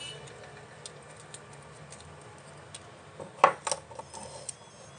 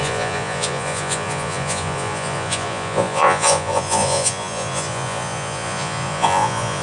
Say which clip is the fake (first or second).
second